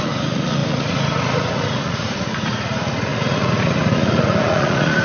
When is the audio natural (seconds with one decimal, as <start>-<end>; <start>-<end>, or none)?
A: none